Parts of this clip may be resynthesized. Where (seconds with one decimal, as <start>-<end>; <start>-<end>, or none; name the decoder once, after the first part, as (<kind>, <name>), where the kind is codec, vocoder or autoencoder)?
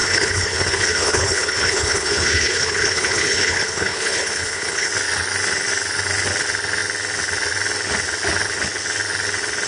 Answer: 0.0-4.9 (codec, HILCodec)